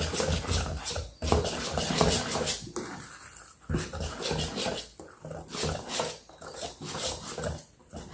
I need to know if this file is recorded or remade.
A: recorded